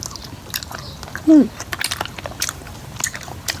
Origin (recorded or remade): recorded